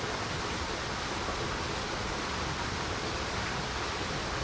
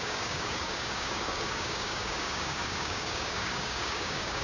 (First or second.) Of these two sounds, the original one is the first